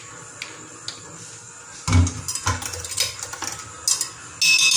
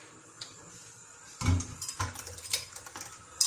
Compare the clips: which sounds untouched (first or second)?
first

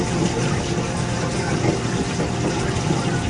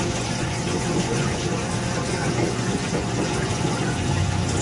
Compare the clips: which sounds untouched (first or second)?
first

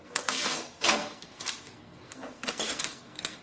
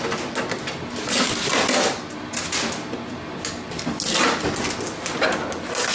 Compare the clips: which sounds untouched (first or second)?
second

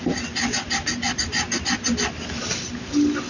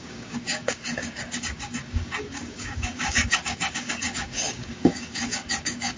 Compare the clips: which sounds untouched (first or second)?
first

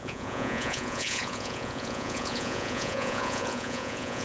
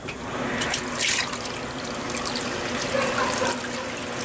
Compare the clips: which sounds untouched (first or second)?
second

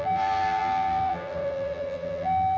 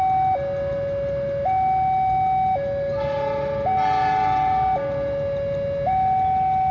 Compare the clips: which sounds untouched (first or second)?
second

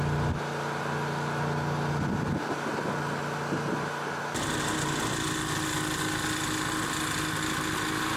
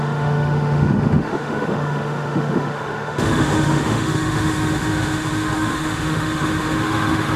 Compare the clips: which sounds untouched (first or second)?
first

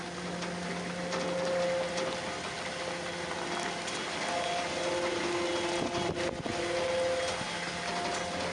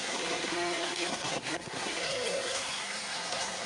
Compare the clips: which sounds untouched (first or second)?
first